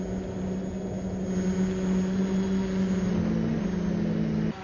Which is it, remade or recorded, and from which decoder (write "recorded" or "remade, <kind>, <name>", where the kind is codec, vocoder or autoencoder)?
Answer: recorded